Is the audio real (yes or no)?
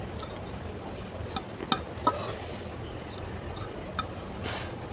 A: yes